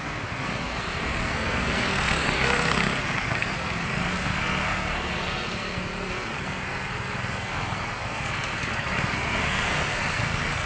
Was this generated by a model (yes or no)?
yes